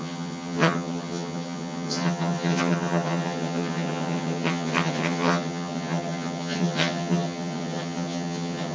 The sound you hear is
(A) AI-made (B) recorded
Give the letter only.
A